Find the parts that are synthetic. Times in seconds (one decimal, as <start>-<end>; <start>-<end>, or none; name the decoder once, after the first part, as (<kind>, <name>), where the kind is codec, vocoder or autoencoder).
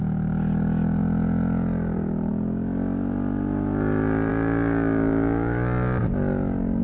1.0-2.3 (vocoder, BigVGAN v2)